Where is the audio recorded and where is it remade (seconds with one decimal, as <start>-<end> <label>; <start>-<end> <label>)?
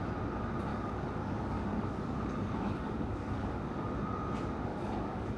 0.0-0.7 recorded; 0.7-3.9 remade; 3.9-4.7 recorded; 4.7-5.4 remade